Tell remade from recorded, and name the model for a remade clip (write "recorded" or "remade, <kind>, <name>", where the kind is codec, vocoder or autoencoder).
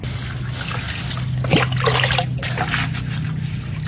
recorded